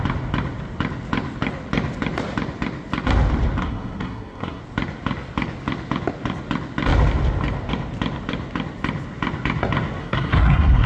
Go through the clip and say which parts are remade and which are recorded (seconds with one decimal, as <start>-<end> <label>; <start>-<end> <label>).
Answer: 0.0-3.6 recorded; 3.6-4.6 remade; 4.6-10.0 recorded; 10.0-10.9 remade